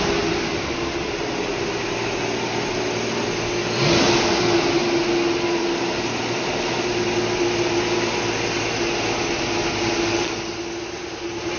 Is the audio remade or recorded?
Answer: recorded